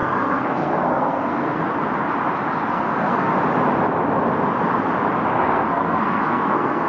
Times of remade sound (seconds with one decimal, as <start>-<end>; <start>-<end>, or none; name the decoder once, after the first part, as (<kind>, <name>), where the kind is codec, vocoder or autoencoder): 0.0-1.6 (codec, SNAC); 2.7-3.3; 5.4-6.9